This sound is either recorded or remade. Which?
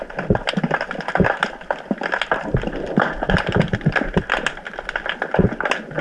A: recorded